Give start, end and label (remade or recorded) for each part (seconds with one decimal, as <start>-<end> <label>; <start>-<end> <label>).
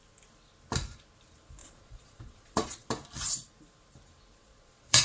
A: 0.0-1.6 recorded; 1.6-2.9 remade; 2.9-4.4 recorded; 4.4-5.0 remade